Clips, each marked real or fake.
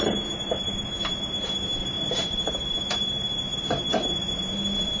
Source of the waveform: fake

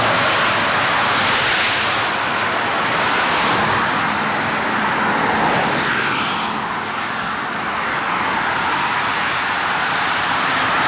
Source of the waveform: real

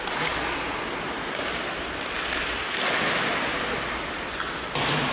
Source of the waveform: real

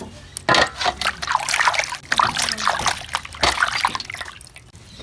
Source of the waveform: real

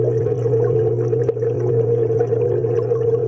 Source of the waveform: real